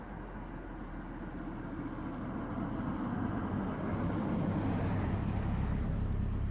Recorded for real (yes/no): yes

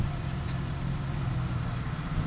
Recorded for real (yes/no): no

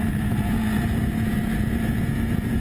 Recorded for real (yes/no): no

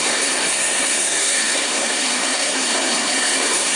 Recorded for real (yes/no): no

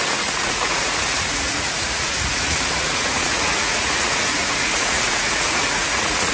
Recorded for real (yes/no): no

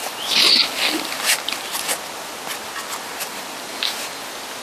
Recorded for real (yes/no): yes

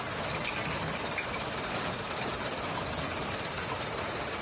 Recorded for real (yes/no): yes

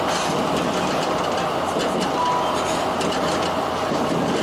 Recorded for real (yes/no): yes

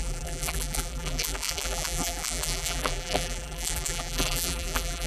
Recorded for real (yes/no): no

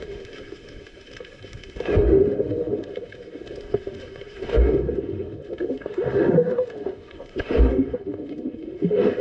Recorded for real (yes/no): no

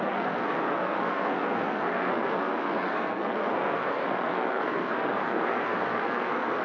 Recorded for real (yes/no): no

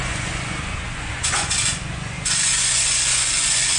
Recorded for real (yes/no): no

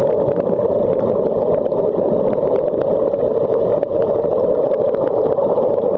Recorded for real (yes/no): yes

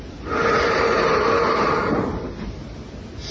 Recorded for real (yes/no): yes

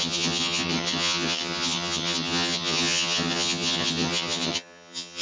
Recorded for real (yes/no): no